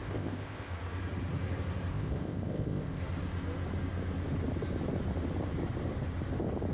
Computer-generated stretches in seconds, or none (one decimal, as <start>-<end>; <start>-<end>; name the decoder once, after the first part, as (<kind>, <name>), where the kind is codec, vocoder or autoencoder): 0.0-0.7 (codec, ZipCodec); 1.9-3.0